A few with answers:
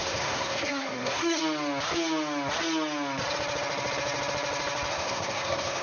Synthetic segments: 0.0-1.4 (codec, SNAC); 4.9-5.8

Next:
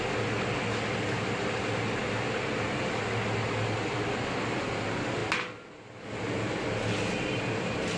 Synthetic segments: none

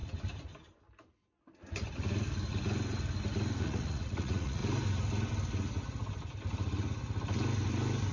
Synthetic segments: 3.6-4.6 (vocoder, Vocos)

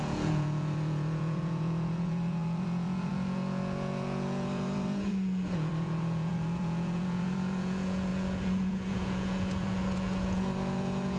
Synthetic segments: 0.0-11.2 (vocoder, Vocos)